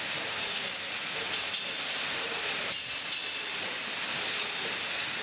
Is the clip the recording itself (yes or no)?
yes